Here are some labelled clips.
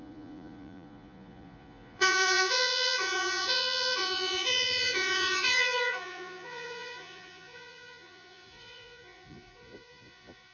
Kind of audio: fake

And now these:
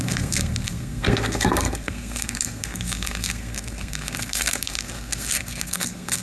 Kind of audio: fake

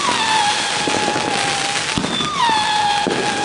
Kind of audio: real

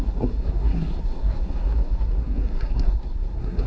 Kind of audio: fake